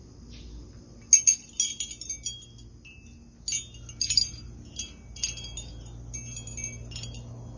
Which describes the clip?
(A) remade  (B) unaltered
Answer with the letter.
B